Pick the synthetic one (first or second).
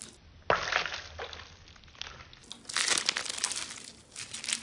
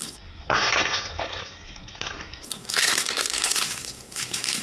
second